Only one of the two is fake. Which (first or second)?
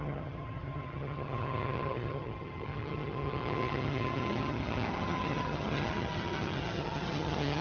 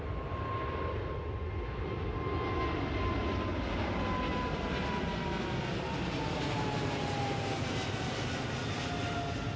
first